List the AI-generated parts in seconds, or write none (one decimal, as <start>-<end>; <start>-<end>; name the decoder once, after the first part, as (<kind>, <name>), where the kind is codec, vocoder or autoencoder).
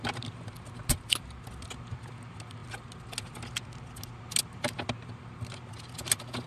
none